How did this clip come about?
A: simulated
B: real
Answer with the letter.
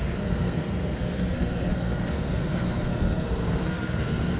A